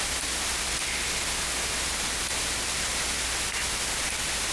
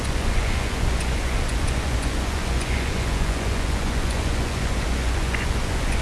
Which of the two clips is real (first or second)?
first